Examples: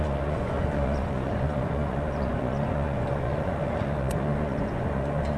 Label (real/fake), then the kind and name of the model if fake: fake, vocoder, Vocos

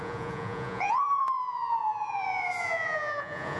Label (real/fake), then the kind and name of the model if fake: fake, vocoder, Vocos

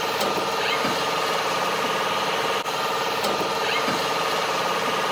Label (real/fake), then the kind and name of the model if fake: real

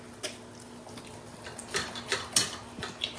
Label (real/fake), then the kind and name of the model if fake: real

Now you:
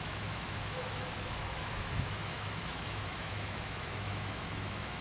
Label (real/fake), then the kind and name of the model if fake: fake, autoencoder, DAC-VAE